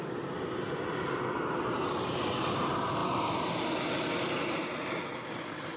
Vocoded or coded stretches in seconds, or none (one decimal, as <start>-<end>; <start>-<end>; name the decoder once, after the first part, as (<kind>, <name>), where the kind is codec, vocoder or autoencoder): none